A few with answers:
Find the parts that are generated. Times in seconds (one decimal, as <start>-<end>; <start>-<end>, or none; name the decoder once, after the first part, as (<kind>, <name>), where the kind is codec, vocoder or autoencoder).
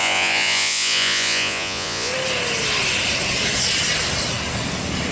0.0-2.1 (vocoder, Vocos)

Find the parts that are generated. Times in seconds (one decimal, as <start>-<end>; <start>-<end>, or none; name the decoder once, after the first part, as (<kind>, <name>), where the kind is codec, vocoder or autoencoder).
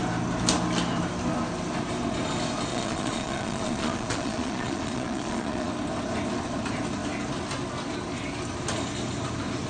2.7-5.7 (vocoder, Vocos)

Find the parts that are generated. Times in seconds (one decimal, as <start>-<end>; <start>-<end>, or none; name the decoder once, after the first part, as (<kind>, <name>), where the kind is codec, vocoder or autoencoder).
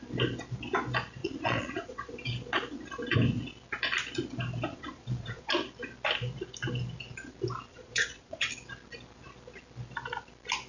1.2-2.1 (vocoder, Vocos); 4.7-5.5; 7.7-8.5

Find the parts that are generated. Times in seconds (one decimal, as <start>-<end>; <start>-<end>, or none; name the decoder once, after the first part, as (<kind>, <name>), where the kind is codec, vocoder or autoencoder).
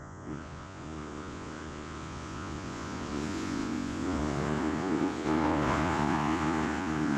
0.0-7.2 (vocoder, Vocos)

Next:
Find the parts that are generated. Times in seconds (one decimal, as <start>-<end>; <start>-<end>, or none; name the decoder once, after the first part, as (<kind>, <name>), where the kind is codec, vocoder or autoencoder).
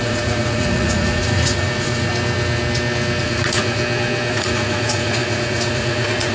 0.0-2.1 (vocoder, Vocos); 3.2-3.8; 4.3-6.3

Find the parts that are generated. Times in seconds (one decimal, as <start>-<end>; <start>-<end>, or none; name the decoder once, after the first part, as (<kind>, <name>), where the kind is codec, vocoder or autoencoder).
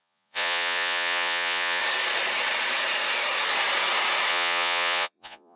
0.0-1.8 (vocoder, Vocos); 4.3-5.6